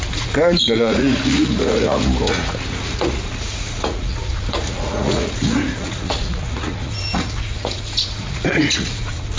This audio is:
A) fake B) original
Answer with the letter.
A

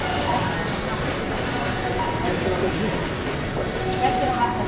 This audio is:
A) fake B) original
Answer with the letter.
B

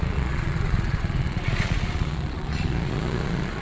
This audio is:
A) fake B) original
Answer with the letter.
A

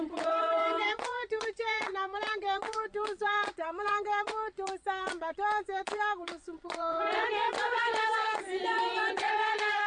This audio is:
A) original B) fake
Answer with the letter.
B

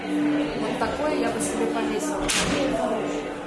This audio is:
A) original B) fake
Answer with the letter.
A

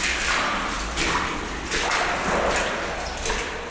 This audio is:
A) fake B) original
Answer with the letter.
B